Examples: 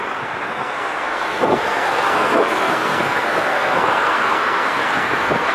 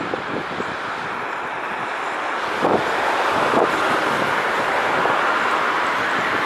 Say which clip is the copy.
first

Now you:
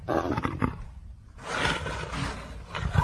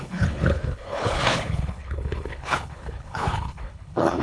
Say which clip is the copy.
second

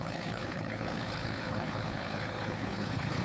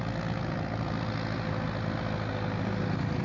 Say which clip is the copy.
first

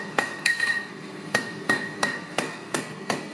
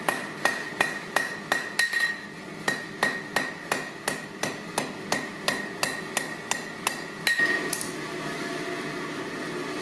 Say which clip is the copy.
first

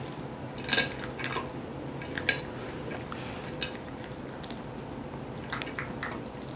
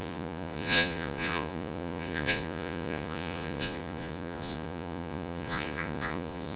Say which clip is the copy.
second